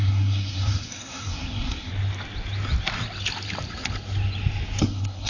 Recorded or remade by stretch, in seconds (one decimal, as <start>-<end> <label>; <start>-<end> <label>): 0.0-1.9 remade; 1.9-4.8 recorded; 4.8-5.3 remade